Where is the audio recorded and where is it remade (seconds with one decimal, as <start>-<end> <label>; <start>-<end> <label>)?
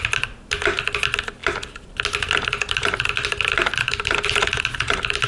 0.0-5.3 recorded